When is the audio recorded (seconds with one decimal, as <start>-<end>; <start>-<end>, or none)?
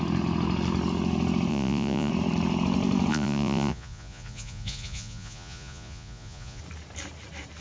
0.0-1.5; 2.1-3.1; 6.6-7.6